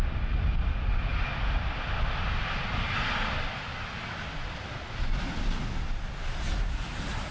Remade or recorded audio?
recorded